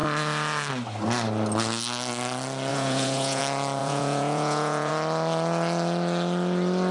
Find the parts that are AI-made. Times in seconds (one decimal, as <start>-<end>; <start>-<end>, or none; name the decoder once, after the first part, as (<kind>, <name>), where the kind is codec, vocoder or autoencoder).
2.7-3.4 (vocoder, Vocos); 3.8-4.9